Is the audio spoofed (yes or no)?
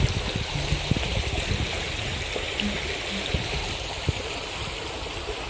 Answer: no